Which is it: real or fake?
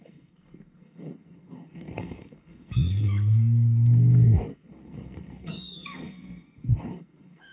fake